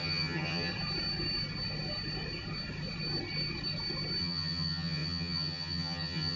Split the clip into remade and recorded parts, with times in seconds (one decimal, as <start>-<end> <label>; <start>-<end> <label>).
0.0-0.7 remade; 0.7-4.2 recorded; 4.2-6.4 remade